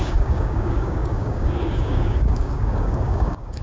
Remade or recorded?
remade